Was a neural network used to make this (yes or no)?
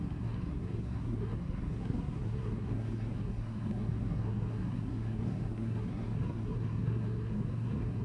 yes